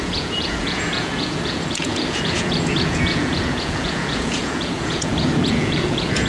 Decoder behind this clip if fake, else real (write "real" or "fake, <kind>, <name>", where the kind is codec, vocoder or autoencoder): fake, vocoder, Vocos